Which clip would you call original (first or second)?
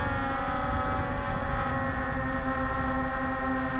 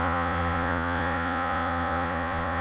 first